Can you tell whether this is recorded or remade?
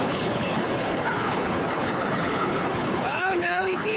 remade